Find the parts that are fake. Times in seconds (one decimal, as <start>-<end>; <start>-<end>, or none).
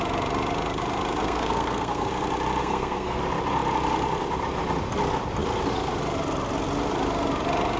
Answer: 1.2-2.1; 2.6-3.2